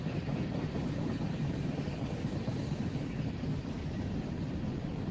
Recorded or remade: recorded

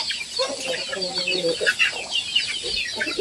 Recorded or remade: recorded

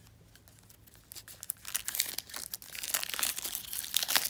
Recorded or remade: recorded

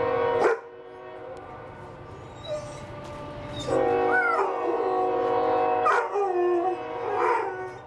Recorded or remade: recorded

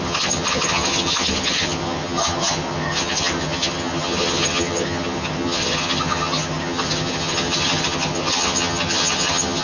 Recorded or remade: remade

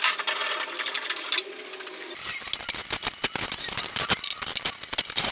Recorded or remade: recorded